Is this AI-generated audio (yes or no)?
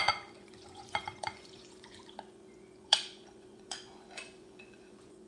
yes